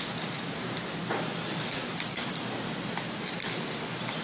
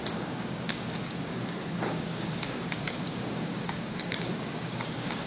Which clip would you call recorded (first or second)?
first